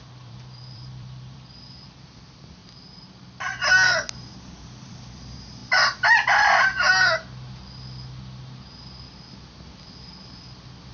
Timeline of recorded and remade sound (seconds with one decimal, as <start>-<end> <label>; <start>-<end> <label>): 0.0-2.6 remade; 2.6-4.4 recorded; 4.4-5.6 remade; 5.6-9.8 recorded; 9.8-10.9 remade

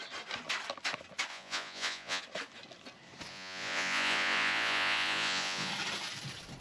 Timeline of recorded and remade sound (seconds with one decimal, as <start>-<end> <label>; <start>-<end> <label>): 0.0-1.3 recorded; 1.3-2.2 remade; 2.2-3.3 recorded; 3.3-5.7 remade; 5.7-6.6 recorded

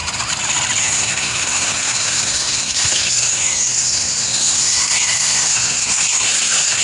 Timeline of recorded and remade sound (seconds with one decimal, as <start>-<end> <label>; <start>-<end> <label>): 0.0-0.8 recorded; 0.8-6.8 remade

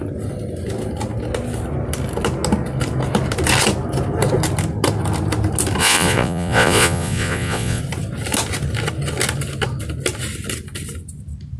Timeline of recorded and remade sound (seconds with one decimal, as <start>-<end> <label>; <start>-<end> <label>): 0.0-5.8 recorded; 5.8-7.8 remade; 7.8-11.6 recorded

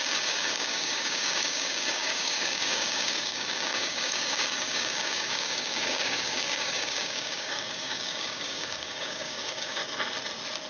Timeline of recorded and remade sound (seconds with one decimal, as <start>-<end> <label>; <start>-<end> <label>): 0.0-9.8 remade; 9.8-10.7 recorded

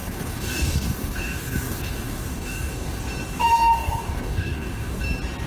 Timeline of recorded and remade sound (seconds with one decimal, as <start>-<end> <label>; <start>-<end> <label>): 0.0-3.0 remade; 3.0-3.4 recorded; 3.4-5.0 remade; 5.0-5.5 recorded

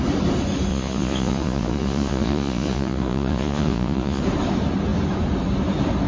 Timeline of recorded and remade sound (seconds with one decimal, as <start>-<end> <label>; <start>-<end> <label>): 0.0-0.7 recorded; 0.7-4.2 remade; 4.2-6.1 recorded

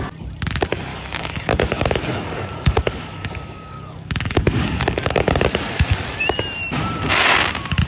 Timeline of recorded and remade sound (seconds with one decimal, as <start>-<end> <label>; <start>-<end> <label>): 0.0-0.9 recorded; 0.9-5.3 remade; 5.3-7.9 recorded